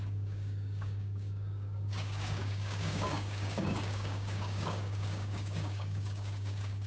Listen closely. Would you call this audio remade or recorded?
remade